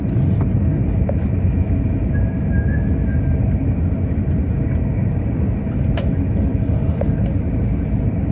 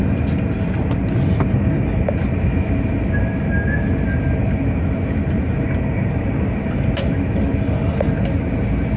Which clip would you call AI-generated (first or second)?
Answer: first